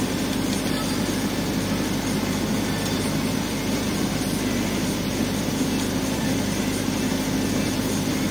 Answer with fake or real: real